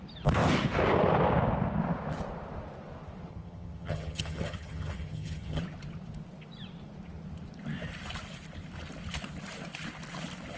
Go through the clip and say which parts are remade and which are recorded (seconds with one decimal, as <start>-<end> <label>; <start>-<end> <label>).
0.0-3.3 recorded; 3.3-5.6 remade; 5.6-10.6 recorded